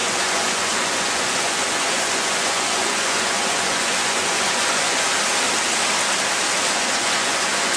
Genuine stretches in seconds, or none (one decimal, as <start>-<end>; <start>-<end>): 5.1-6.7